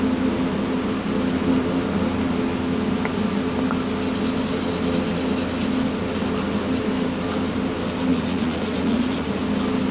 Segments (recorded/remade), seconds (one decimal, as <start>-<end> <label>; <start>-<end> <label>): 0.0-8.1 recorded; 8.1-9.4 remade; 9.4-9.9 recorded